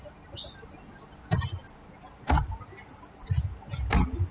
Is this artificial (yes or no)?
no